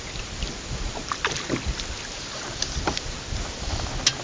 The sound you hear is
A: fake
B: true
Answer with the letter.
B